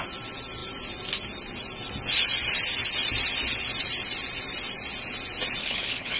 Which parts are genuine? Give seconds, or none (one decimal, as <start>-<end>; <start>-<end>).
0.0-5.6